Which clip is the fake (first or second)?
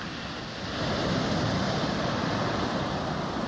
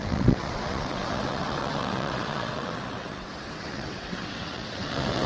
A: second